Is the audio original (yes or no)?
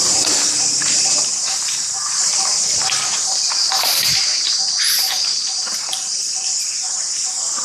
no